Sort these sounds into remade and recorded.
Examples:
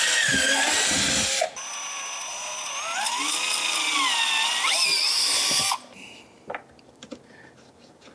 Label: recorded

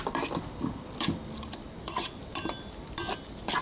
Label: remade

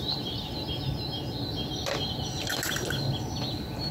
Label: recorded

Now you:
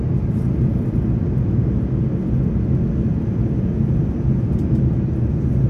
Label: recorded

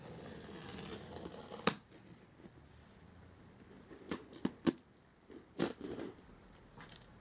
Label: remade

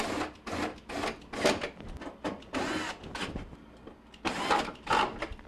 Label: recorded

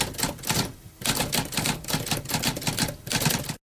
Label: recorded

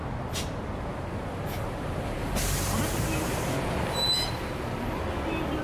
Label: recorded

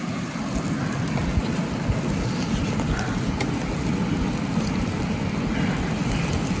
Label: recorded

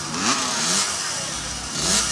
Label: recorded